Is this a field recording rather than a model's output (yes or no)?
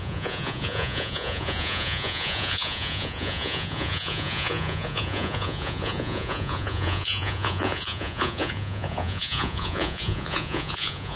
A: no